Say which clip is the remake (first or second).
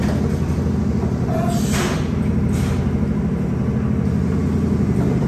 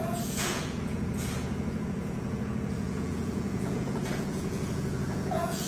second